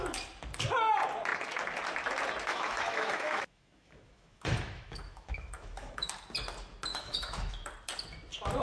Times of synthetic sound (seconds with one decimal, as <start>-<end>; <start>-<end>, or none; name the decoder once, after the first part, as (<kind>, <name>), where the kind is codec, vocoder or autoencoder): 2.5-6.1 (autoencoder, DAC-VAE); 6.9-7.5